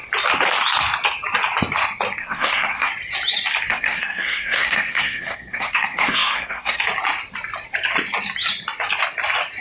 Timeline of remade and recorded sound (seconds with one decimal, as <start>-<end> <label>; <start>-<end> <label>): 0.0-2.2 recorded; 2.2-2.9 remade; 2.9-3.7 recorded; 3.7-6.8 remade; 6.8-9.6 recorded